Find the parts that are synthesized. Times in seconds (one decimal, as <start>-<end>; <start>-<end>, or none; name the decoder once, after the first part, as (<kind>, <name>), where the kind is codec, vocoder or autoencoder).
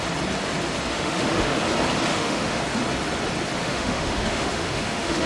0.9-1.6 (autoencoder, DAC-VAE); 2.1-2.6; 3.6-5.3